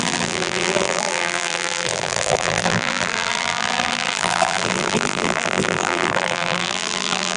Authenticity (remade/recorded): remade